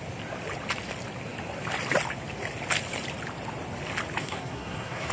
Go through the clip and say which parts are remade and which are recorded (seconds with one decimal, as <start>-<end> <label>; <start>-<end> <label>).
0.0-4.2 recorded; 4.2-5.1 remade